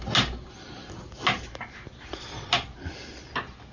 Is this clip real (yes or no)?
yes